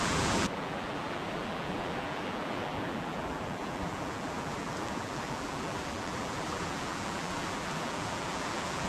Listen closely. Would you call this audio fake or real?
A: fake